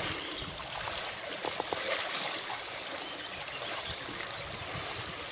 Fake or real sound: real